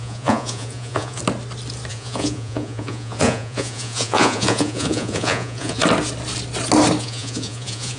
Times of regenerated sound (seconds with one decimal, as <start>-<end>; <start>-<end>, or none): 0.0-1.2; 1.9-5.8; 7.0-8.0